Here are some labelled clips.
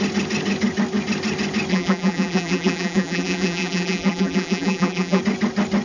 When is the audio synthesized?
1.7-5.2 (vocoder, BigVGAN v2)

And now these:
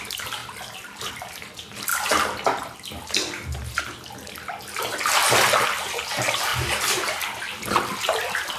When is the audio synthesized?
none

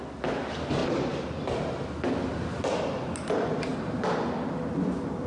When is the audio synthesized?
0.8-1.8 (vocoder, BigVGAN v2)

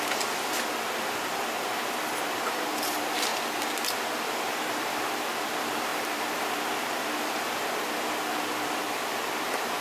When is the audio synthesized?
0.0-3.3 (vocoder, BigVGAN v2); 4.3-9.8

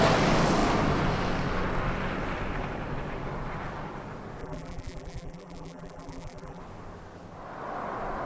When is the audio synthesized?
4.4-6.6 (vocoder, BigVGAN v2)